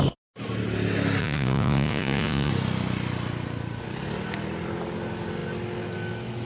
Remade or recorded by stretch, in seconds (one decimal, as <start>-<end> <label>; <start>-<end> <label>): 0.0-1.2 recorded; 1.2-2.5 remade; 2.5-6.5 recorded